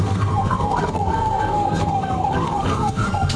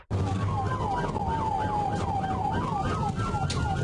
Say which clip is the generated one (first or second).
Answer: first